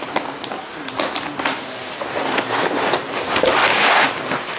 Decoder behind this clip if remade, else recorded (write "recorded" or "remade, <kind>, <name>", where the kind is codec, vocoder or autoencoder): recorded